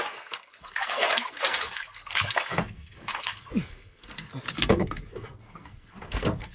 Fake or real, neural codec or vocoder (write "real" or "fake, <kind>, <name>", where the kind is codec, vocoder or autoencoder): fake, codec, SNAC